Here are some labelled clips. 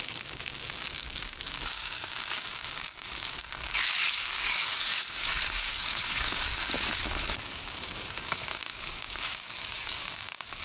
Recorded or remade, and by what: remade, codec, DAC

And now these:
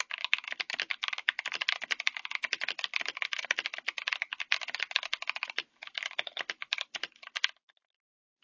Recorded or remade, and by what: recorded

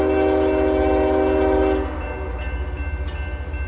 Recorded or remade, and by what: recorded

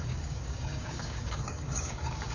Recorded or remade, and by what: remade, codec, DAC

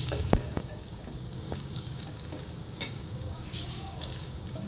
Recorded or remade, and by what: remade, codec, DAC